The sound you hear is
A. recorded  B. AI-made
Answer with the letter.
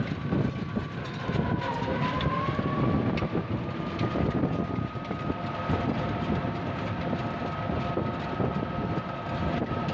A